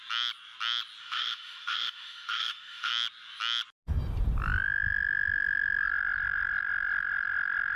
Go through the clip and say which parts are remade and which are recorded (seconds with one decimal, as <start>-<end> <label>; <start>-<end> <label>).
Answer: 0.0-1.0 recorded; 1.0-2.9 remade; 2.9-7.8 recorded